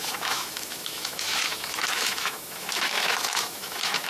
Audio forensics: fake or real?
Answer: fake